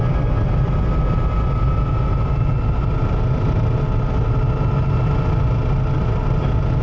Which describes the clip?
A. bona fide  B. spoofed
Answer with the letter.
A